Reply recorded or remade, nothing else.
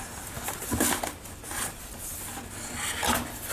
recorded